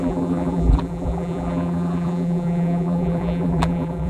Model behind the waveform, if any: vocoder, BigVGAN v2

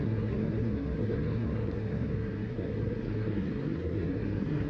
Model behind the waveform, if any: codec, SNAC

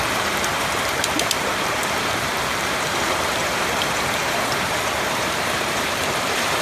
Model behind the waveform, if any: vocoder, BigVGAN v2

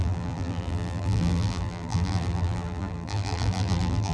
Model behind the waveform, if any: vocoder, BigVGAN v2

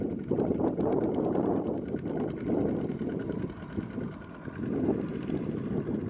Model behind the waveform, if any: none